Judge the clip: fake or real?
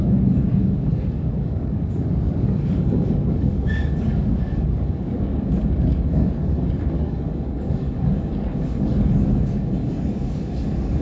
fake